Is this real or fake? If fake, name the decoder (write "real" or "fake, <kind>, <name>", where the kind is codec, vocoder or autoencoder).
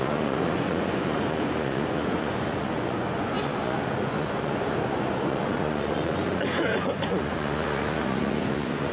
fake, vocoder, Vocos